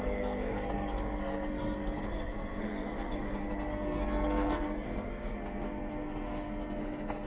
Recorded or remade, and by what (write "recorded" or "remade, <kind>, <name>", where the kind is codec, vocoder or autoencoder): remade, codec, SNAC